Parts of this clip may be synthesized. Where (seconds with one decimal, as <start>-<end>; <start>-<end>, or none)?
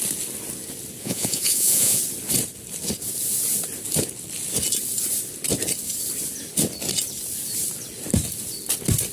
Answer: 1.0-2.0